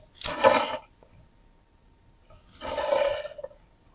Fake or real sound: real